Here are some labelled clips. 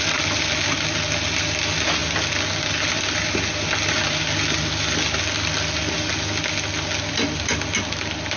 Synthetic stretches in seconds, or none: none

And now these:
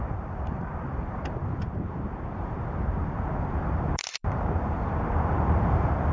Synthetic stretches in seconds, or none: 0.0-6.1 (vocoder, BigVGAN v2)